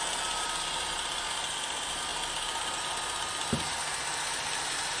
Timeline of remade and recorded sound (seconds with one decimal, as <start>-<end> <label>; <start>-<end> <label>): 0.0-5.0 recorded